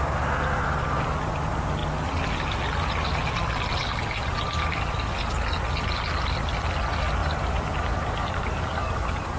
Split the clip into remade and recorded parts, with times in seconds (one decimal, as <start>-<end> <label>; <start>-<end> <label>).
0.0-7.2 recorded; 7.2-9.4 remade